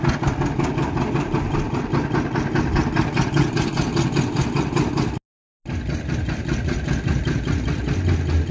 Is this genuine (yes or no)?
yes